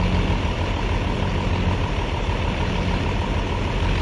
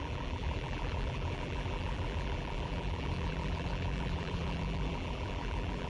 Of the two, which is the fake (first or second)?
second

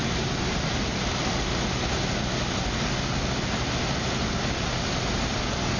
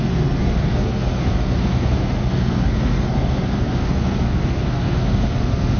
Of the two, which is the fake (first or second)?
second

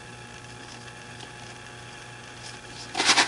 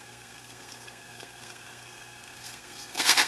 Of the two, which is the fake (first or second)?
second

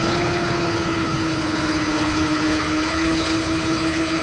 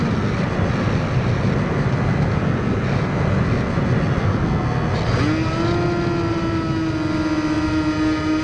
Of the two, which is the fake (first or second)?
first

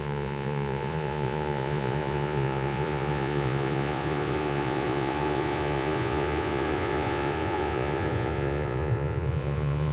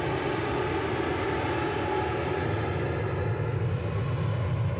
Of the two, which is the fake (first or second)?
first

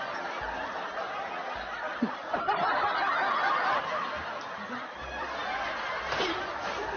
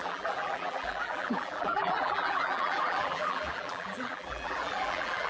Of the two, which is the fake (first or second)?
second